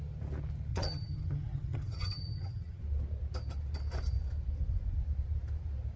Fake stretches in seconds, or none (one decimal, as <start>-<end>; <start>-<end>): 0.7-2.8